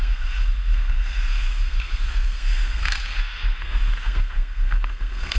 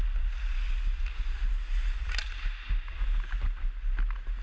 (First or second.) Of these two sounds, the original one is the second